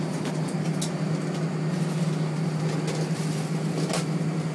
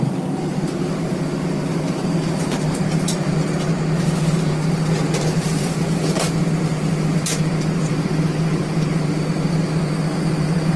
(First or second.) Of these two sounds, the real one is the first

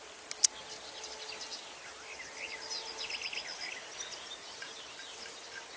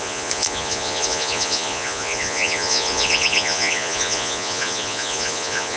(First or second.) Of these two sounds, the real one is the first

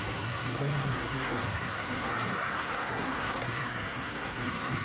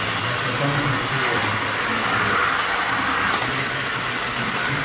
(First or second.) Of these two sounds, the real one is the second